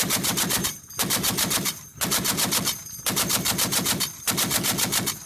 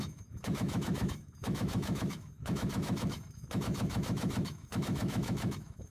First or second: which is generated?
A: second